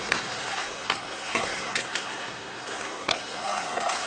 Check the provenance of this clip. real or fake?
fake